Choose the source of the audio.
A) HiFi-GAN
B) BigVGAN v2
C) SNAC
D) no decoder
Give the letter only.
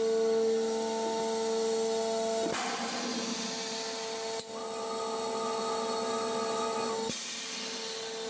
D